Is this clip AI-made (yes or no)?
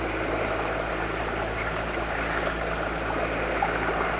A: no